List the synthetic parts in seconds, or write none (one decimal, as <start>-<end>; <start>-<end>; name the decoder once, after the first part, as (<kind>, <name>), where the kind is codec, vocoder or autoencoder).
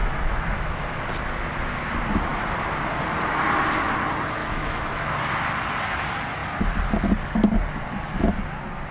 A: 0.0-1.0 (autoencoder, DAC-VAE); 4.4-5.1